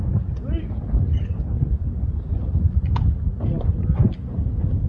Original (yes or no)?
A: yes